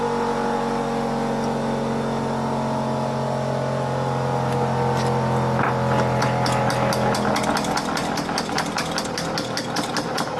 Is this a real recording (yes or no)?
yes